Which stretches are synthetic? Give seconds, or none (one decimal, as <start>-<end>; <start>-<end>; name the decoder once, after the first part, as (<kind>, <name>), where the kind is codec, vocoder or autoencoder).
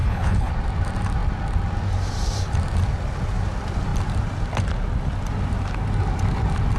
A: 0.0-0.5 (codec, HILCodec)